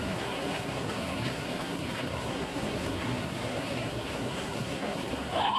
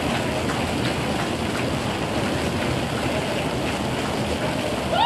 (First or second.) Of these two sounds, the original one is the second